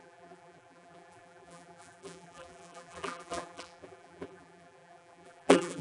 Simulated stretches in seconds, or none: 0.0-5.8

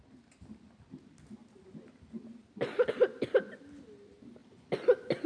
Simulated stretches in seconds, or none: none

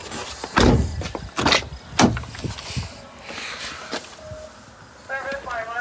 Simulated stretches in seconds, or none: none

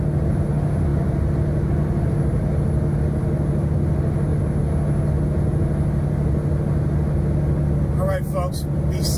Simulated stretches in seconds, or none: none

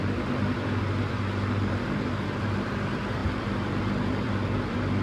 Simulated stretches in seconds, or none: 0.0-5.0

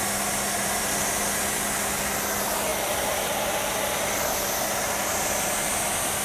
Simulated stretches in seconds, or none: none